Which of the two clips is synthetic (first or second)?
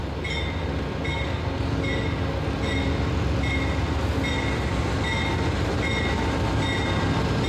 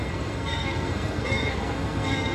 second